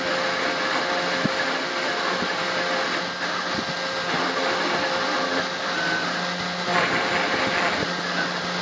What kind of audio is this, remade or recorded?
recorded